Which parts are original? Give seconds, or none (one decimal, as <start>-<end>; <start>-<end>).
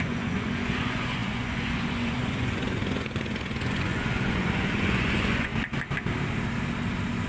5.5-7.3